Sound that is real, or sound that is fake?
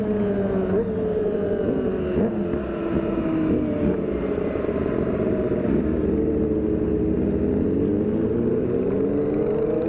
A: real